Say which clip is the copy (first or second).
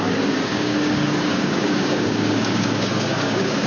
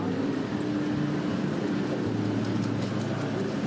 first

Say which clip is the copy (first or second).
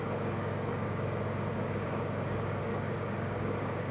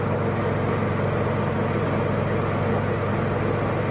first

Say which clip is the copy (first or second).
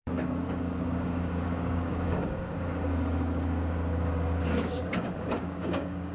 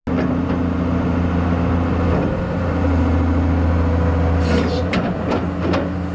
first